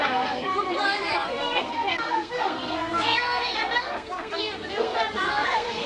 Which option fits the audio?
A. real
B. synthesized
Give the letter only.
B